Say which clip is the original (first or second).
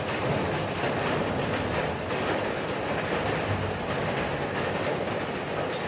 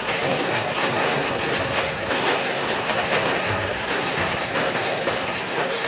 first